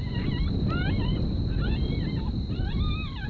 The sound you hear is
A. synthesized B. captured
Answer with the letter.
B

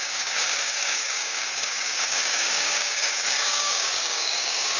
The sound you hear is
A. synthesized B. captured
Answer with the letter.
A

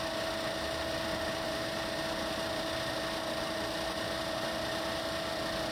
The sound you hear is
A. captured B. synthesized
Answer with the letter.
A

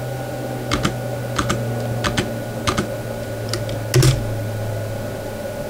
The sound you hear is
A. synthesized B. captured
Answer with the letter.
B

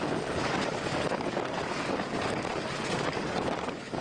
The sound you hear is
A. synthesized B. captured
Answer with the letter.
A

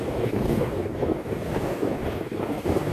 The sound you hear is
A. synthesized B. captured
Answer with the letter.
A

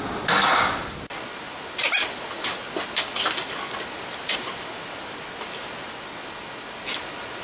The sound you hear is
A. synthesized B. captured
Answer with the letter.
B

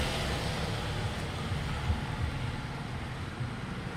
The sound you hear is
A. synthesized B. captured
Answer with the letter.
B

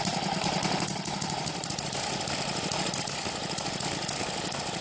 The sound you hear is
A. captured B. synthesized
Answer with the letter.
A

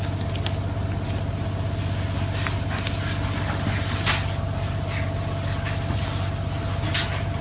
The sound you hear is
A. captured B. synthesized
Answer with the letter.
A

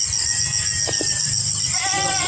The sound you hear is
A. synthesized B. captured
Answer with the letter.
B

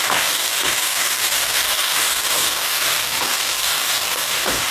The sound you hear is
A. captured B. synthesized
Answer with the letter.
B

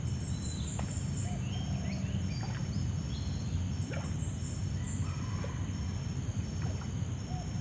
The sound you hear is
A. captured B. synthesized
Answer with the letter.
A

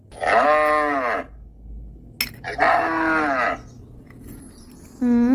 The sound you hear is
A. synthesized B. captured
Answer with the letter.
B